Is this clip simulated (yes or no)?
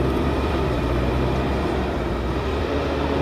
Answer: yes